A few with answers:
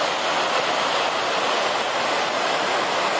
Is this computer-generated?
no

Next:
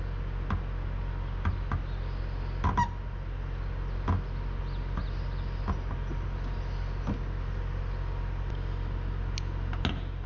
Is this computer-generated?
no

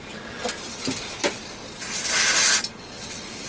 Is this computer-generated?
no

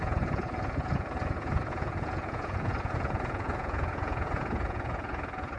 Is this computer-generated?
yes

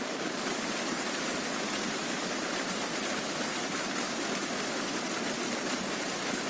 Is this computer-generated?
no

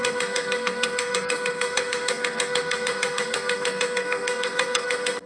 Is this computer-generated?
yes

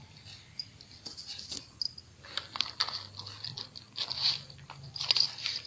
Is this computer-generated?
no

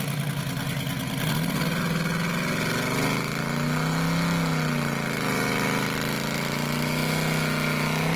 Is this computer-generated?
no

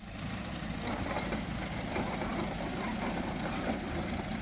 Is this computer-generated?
yes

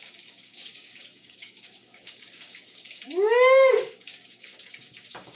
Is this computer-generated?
yes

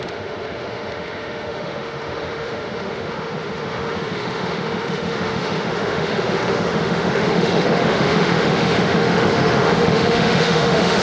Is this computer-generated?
yes